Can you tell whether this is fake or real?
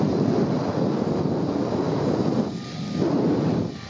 real